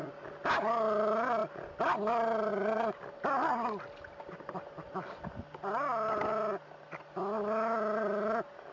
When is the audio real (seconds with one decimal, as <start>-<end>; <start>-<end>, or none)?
0.0-8.7